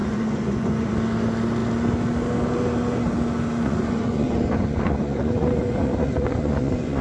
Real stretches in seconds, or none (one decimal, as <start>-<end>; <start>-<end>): 0.9-3.6